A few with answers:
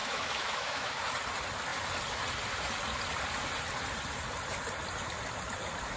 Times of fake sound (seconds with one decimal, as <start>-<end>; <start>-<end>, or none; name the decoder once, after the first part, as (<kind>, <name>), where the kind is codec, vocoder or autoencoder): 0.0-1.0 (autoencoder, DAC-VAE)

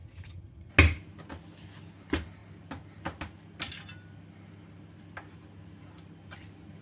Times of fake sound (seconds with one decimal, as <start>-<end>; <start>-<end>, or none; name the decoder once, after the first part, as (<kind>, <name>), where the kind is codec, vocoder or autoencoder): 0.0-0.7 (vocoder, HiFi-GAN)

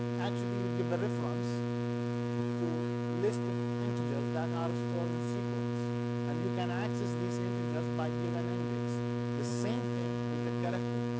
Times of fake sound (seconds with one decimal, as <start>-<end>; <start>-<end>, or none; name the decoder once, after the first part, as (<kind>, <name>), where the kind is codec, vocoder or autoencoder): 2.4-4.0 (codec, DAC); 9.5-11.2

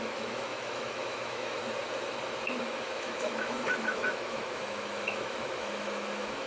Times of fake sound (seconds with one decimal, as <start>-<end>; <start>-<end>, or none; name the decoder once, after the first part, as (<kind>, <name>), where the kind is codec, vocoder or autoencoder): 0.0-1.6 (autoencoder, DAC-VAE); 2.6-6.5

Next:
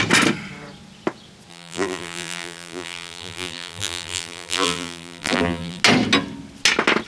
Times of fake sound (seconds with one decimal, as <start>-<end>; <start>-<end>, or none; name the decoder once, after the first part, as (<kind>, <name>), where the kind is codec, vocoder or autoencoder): 1.5-5.8 (vocoder, BigVGAN v2)

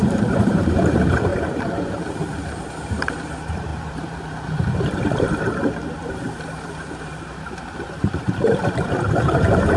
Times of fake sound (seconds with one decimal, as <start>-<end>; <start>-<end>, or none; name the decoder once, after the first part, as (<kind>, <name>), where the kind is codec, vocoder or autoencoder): 0.0-9.8 (vocoder, BigVGAN v2)